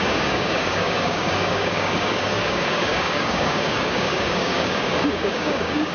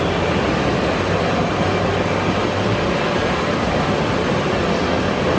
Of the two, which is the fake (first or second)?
first